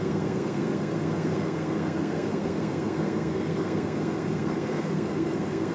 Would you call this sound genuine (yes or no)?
no